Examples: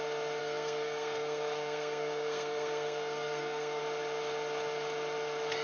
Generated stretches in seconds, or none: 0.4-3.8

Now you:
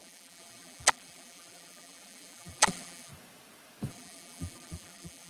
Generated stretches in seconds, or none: 0.0-3.1; 3.9-5.3

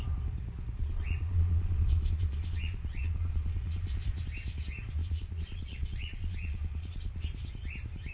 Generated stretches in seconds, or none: 0.8-4.2; 5.0-7.2

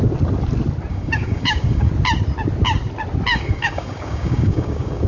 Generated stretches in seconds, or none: 0.9-1.9; 3.3-5.1

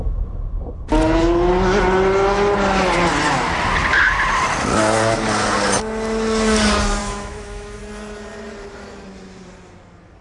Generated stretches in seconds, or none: 7.0-7.8

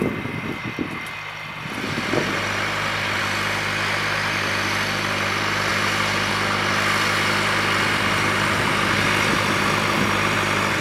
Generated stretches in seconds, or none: 5.7-6.3